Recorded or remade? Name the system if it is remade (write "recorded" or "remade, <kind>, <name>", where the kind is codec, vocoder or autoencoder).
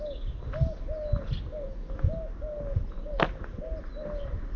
recorded